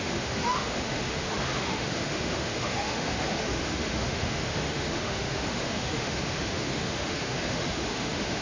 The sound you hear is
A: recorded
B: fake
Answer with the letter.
B